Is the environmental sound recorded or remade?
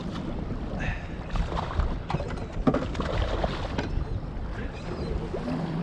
recorded